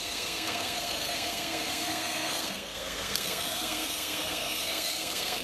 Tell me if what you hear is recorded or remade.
remade